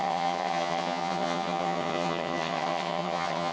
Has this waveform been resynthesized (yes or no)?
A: yes